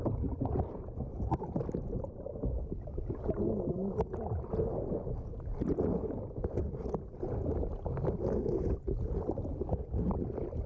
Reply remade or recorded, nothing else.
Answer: recorded